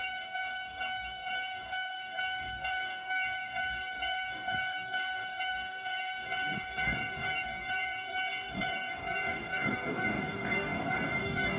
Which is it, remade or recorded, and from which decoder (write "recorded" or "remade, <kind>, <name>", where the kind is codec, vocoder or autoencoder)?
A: remade, codec, DAC